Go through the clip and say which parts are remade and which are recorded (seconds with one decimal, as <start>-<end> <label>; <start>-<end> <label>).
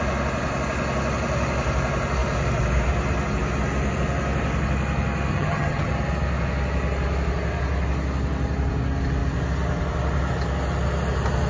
0.0-5.3 recorded; 5.3-5.9 remade; 5.9-11.5 recorded